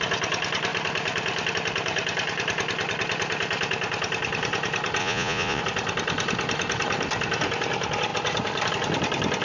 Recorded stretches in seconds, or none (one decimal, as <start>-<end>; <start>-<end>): 0.0-5.0; 5.6-9.4